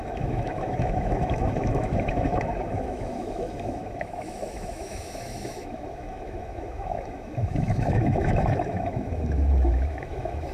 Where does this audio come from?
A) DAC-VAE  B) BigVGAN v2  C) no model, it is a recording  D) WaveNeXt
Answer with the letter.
A